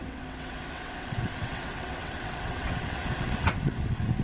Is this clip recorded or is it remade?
remade